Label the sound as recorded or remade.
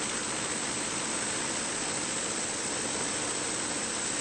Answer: recorded